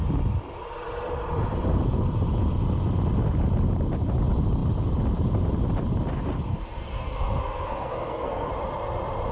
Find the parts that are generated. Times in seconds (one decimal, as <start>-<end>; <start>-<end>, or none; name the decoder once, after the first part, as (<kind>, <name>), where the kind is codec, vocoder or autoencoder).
6.5-8.5 (codec, SNAC)